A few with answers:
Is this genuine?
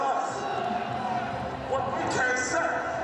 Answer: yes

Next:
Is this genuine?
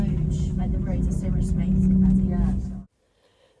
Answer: yes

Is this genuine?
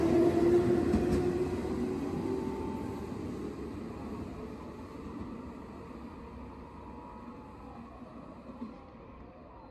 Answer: yes